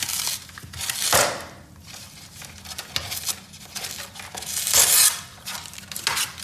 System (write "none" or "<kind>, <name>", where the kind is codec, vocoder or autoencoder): none